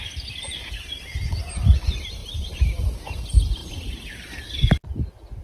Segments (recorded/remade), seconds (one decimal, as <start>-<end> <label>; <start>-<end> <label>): 0.0-2.2 recorded; 2.2-2.8 remade; 2.8-3.6 recorded; 3.6-4.3 remade; 4.3-5.4 recorded